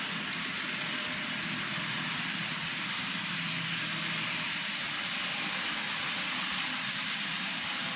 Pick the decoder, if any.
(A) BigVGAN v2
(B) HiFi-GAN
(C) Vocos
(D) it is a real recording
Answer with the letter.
D